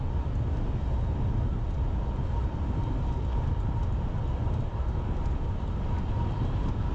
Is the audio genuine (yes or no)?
yes